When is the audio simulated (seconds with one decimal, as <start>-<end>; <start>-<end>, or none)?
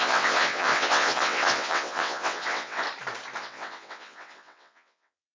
0.0-2.8; 3.4-5.3